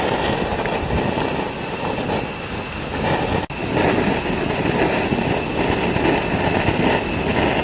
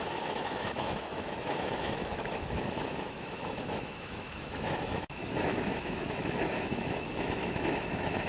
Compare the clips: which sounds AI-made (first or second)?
second